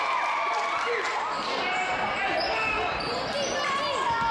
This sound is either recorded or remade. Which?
recorded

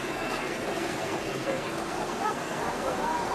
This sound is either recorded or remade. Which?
remade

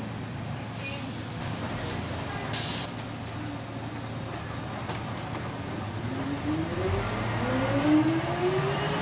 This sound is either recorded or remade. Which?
recorded